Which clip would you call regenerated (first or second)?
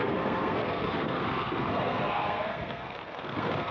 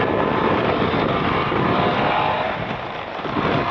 first